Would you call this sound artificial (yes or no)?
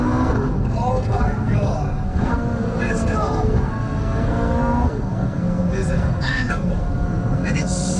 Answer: yes